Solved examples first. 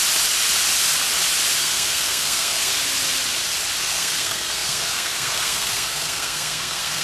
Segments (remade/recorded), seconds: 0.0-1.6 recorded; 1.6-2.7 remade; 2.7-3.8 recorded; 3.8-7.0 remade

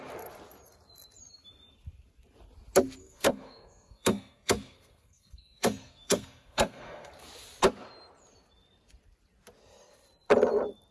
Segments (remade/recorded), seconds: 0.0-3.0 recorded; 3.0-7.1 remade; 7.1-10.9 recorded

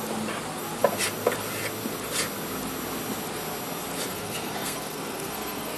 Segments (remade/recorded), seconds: 0.0-4.1 recorded; 4.1-5.8 remade

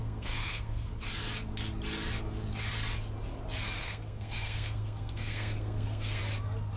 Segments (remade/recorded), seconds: 0.0-0.9 remade; 0.9-3.8 recorded; 3.8-6.2 remade; 6.2-6.8 recorded

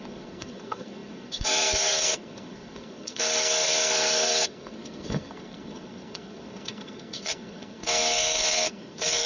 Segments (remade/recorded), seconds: 0.0-9.3 remade

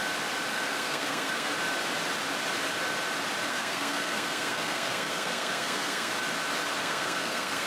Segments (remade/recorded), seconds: 0.0-0.5 recorded; 0.5-1.5 remade; 1.5-3.5 recorded; 3.5-6.1 remade; 6.1-6.8 recorded; 6.8-7.7 remade

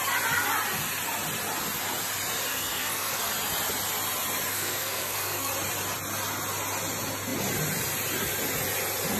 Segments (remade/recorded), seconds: 0.0-2.5 recorded; 2.5-3.3 remade; 3.3-4.5 recorded; 4.5-5.5 remade; 5.5-9.2 recorded